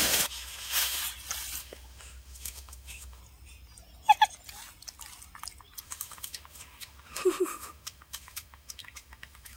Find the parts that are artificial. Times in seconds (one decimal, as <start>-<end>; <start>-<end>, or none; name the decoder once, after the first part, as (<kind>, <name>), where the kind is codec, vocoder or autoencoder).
0.0-1.0 (autoencoder, DAC-VAE); 1.6-3.2; 5.8-9.6